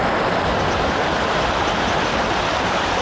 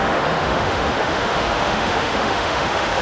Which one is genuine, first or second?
first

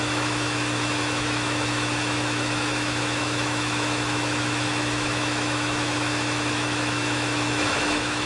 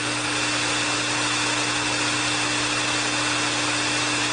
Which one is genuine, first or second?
second